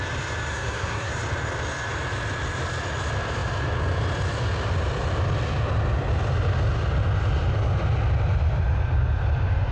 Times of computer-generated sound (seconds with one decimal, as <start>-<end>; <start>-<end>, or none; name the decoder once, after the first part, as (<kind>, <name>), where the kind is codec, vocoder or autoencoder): 0.5-1.1 (codec, SNAC)